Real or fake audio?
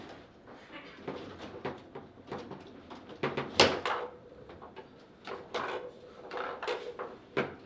real